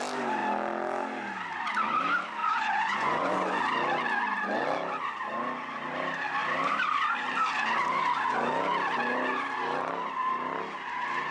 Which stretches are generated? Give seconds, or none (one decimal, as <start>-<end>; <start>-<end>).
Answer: 2.4-3.6